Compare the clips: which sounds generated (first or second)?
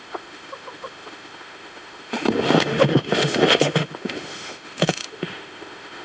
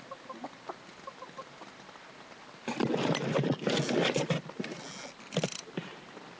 first